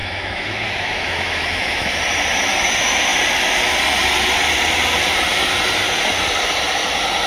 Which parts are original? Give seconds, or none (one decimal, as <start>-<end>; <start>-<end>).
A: 2.0-7.3